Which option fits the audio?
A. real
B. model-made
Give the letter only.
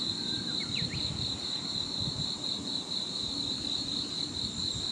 B